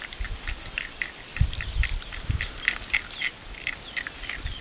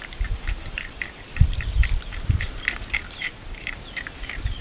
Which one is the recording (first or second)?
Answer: first